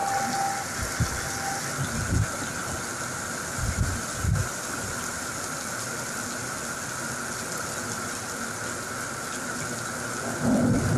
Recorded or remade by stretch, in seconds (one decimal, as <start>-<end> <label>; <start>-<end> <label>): 0.0-11.0 recorded